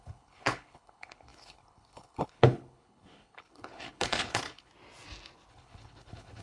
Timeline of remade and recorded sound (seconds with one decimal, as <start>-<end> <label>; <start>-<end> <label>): 0.0-4.7 remade; 4.7-5.5 recorded; 5.5-6.4 remade